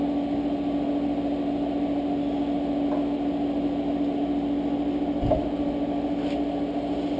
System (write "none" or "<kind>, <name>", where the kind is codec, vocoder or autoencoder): none